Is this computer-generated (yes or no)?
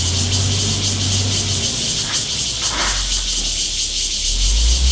no